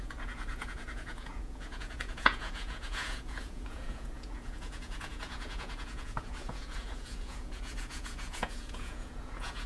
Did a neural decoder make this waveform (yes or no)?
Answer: yes